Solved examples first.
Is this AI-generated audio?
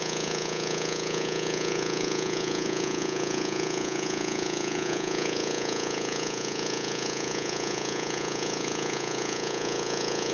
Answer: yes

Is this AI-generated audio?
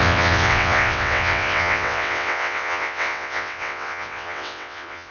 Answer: yes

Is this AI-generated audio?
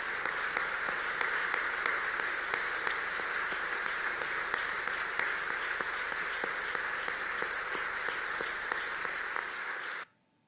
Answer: no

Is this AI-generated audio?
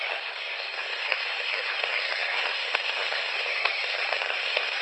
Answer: yes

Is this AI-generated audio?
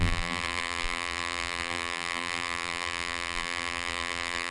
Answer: yes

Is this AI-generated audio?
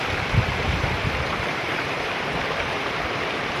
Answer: yes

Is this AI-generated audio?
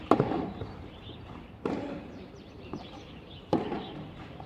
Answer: yes